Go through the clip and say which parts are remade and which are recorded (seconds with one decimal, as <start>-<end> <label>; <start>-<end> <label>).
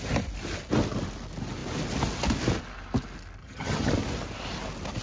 0.0-3.4 recorded; 3.4-3.9 remade; 3.9-5.0 recorded